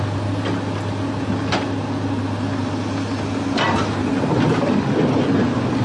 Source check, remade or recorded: recorded